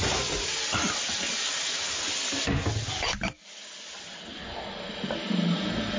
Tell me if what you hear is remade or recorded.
recorded